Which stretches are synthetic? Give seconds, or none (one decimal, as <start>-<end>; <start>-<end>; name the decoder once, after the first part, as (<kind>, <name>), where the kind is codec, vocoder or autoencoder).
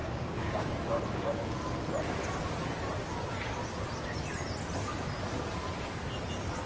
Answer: 0.0-0.7 (codec, DAC)